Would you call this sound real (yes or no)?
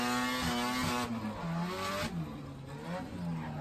yes